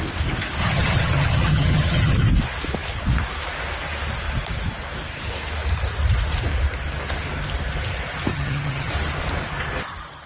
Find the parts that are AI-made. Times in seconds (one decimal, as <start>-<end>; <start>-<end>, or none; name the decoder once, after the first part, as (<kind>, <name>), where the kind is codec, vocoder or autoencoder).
0.6-2.3 (vocoder, HiFi-GAN); 8.3-8.9